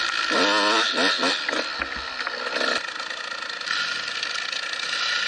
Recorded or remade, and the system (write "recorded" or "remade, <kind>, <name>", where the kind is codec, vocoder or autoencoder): recorded